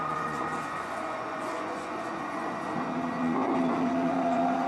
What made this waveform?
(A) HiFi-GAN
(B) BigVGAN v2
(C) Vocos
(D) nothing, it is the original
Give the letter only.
C